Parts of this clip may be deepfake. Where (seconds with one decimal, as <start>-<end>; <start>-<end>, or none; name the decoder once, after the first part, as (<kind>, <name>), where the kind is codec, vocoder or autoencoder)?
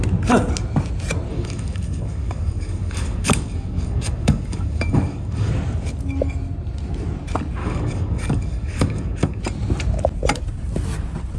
1.3-5.5 (codec, DAC); 7.6-9.4